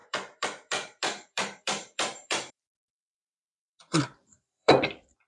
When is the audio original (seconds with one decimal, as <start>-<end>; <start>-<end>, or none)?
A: 3.2-3.6; 4.7-5.3

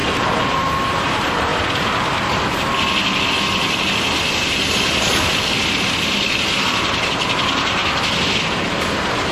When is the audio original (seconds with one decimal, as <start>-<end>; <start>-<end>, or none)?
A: 1.5-6.7; 7.8-8.4

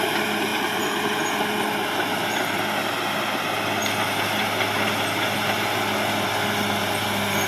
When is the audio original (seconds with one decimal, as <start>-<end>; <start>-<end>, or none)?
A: 0.0-0.5; 1.2-2.1; 2.6-7.5